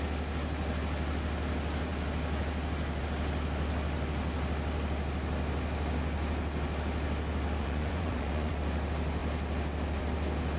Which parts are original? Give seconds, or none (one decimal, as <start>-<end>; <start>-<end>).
0.0-7.6; 8.5-10.6